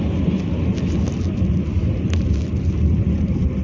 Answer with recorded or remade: recorded